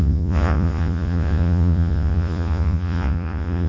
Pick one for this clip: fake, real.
fake